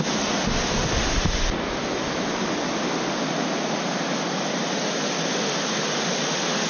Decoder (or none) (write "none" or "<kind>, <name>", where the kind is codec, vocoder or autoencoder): none